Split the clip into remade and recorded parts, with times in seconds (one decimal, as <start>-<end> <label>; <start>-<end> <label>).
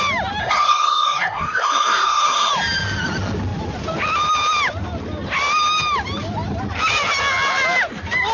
0.0-0.4 recorded; 0.4-2.5 remade; 2.5-8.3 recorded